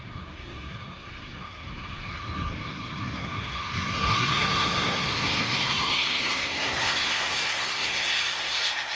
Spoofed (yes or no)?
yes